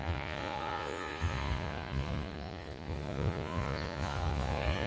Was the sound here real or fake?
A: fake